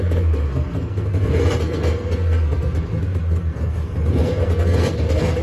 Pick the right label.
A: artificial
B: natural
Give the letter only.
A